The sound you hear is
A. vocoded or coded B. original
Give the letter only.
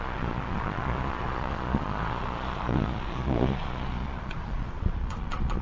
A